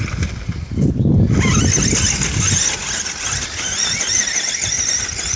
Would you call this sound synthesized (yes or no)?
no